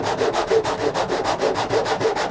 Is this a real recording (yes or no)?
no